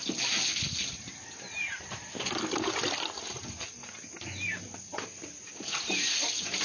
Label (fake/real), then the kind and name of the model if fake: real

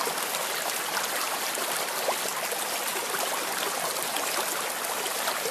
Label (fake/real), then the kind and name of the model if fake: real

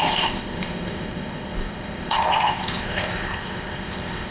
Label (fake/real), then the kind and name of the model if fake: fake, codec, ZipCodec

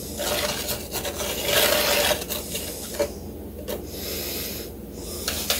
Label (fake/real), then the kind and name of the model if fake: real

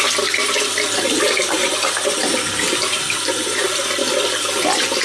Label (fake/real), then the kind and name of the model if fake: real